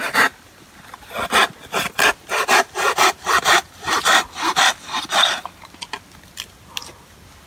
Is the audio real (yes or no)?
yes